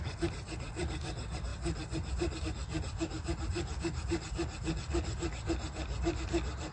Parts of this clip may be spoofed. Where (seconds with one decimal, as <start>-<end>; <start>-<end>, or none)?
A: none